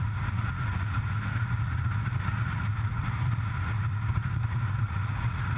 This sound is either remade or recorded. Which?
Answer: remade